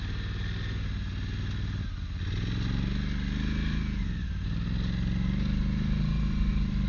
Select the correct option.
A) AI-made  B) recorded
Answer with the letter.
B